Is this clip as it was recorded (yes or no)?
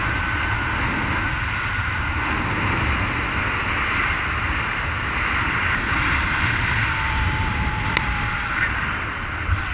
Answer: yes